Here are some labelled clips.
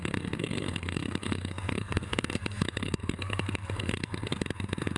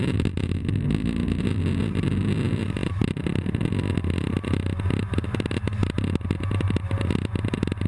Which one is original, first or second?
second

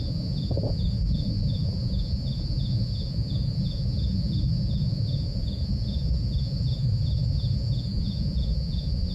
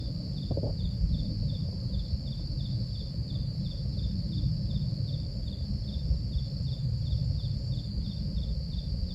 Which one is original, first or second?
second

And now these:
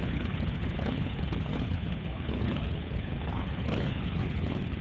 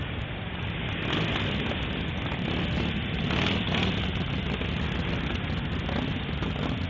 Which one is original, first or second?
second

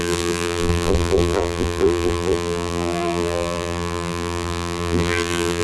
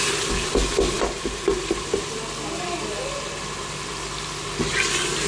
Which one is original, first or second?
second